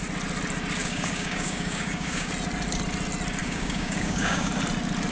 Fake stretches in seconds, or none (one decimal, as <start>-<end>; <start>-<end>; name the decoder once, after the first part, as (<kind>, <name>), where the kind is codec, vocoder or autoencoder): 0.8-2.3 (codec, DAC); 3.4-4.5